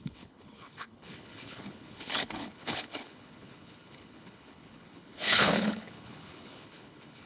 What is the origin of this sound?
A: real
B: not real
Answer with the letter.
B